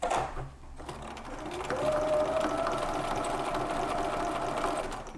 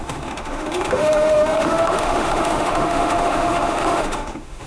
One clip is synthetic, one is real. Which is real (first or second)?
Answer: first